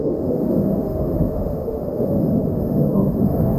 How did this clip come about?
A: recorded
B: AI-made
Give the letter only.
B